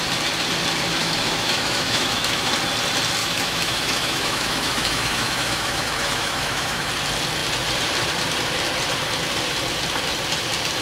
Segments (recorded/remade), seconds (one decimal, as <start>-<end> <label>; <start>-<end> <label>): 0.0-1.0 recorded; 1.0-2.5 remade; 2.5-3.2 recorded; 3.2-6.9 remade; 6.9-10.8 recorded